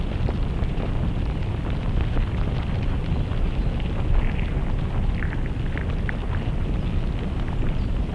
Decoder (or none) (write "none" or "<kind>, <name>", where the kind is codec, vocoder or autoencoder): none